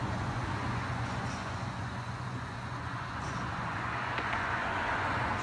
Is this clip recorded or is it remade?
remade